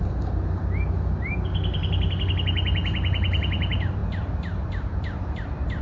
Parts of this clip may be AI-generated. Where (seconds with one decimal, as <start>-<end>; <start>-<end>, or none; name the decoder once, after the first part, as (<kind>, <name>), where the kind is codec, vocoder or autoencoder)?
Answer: none